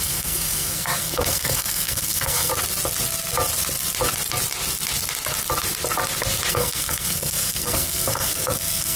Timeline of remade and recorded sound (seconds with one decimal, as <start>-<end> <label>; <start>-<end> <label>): 0.0-2.5 remade; 2.5-6.5 recorded; 6.5-9.0 remade